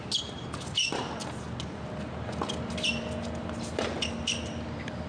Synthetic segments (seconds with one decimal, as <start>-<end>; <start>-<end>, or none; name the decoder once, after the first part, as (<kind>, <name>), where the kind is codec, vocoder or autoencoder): none